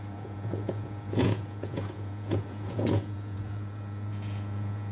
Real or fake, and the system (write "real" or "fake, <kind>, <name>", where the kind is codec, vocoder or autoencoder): fake, vocoder, Vocos